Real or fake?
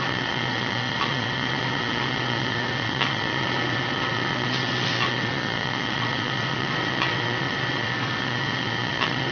fake